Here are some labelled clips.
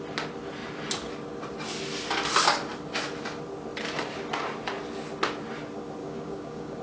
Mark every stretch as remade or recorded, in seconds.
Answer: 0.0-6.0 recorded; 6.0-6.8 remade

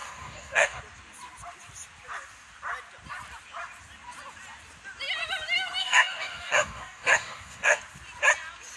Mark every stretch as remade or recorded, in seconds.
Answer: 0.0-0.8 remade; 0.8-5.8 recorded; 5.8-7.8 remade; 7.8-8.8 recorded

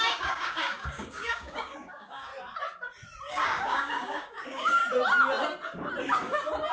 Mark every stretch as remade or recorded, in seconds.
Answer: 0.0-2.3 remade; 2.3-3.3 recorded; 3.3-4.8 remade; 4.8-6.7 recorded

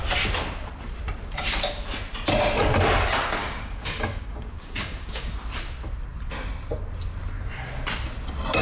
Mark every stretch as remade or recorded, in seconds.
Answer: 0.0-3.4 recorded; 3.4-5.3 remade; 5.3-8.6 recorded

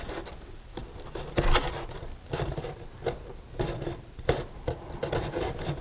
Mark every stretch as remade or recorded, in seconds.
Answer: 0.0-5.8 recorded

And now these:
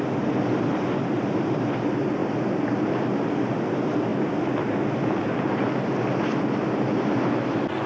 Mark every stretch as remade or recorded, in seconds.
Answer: 0.0-7.9 recorded

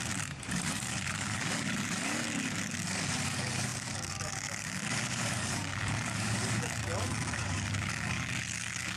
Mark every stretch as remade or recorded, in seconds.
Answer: 0.0-9.0 remade

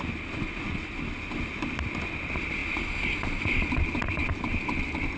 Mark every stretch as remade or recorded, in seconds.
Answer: 0.0-5.2 recorded